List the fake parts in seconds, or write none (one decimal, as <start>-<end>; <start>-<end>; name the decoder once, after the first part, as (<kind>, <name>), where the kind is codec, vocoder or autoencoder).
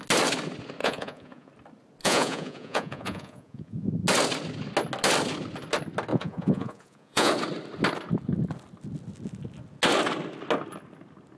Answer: 0.8-1.5 (vocoder, Vocos); 2.0-3.9; 6.1-7.3